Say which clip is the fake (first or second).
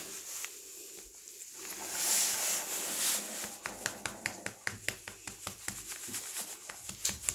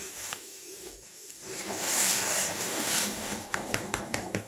second